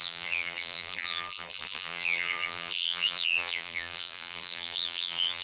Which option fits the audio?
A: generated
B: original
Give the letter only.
A